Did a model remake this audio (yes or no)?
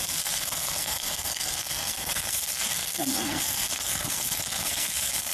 yes